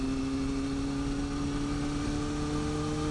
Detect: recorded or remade recorded